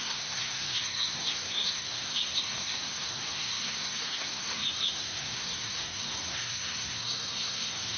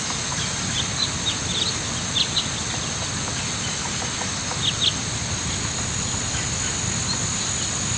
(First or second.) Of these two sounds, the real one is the second